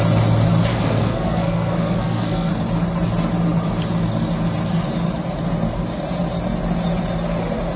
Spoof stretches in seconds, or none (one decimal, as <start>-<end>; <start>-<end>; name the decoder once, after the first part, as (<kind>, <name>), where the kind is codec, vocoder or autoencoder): 0.7-2.5 (codec, SNAC)